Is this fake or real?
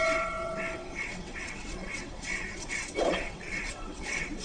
fake